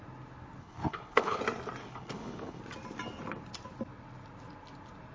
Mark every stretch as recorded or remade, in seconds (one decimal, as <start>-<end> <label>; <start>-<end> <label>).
0.0-0.6 recorded; 0.6-1.4 remade; 1.4-1.8 recorded; 1.8-2.6 remade; 2.6-5.1 recorded